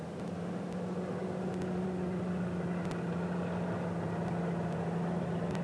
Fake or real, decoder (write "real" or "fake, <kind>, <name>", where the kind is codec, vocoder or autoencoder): real